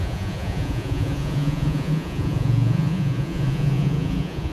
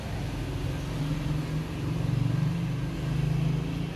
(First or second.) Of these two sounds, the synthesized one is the first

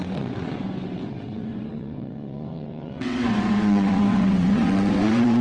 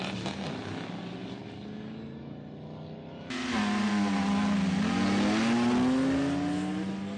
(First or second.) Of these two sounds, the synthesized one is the first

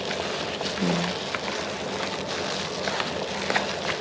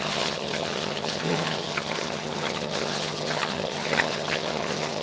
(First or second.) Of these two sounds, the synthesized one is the second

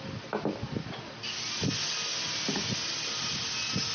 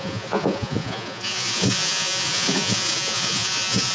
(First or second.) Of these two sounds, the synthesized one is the second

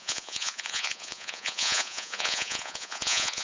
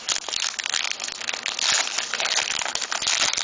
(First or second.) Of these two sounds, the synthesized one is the first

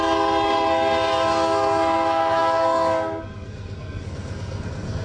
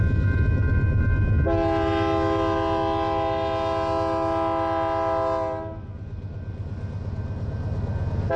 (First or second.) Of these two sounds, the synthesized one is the first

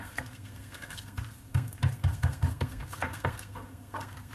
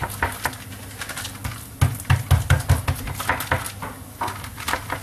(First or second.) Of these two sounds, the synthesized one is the first